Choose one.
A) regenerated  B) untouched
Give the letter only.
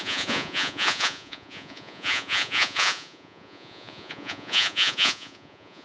A